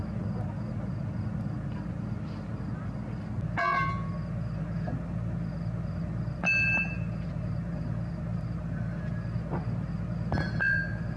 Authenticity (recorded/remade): recorded